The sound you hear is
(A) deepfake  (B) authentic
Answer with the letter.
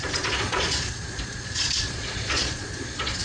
A